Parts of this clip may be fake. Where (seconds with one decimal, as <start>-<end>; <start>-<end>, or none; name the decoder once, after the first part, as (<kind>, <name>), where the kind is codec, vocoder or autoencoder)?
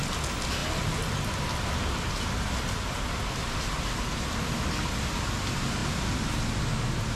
none